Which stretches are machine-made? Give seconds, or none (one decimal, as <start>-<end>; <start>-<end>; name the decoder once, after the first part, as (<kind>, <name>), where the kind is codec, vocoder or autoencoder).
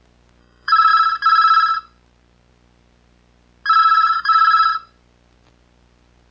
0.4-0.9 (codec, DAC); 3.8-4.7